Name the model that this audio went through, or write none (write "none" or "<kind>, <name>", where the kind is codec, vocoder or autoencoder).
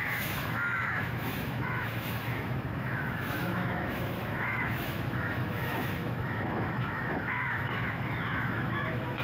autoencoder, DAC-VAE